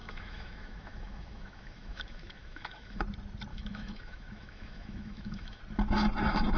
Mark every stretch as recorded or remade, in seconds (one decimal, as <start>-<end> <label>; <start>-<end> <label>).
0.0-3.0 remade; 3.0-3.5 recorded; 3.5-5.6 remade; 5.6-6.6 recorded

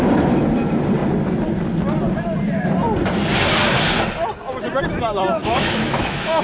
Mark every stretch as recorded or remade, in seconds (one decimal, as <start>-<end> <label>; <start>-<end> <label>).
0.0-5.4 recorded; 5.4-6.4 remade